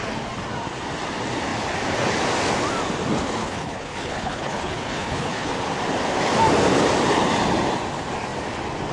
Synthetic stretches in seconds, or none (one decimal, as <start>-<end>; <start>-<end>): 3.4-5.5